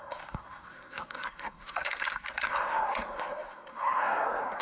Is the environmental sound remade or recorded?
remade